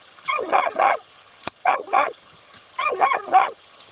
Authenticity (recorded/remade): remade